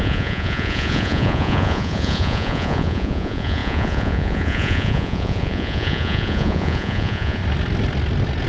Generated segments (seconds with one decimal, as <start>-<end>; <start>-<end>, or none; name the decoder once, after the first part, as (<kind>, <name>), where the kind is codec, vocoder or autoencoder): 0.0-7.4 (vocoder, Vocos)